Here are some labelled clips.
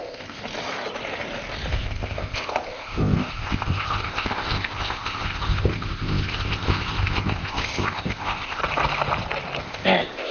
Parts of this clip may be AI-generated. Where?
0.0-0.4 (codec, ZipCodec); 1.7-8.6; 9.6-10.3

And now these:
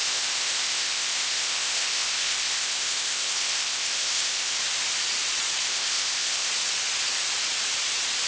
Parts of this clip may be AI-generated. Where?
0.0-4.6 (codec, ZipCodec); 5.6-6.5